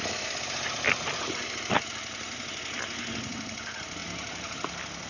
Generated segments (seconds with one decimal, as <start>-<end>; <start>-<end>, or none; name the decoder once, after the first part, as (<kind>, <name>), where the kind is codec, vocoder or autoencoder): none